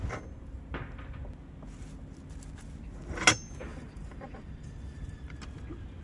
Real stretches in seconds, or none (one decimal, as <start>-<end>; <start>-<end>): 0.0-3.7; 5.4-6.0